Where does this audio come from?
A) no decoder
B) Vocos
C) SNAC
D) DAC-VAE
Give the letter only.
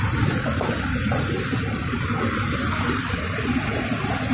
A